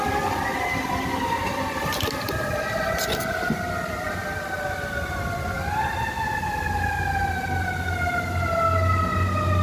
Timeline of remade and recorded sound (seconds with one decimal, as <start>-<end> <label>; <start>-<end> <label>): 0.0-9.6 recorded